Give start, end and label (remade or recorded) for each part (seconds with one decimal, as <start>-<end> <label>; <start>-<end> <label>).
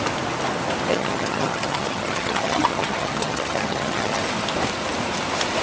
0.0-0.9 recorded; 0.9-4.2 remade; 4.2-5.6 recorded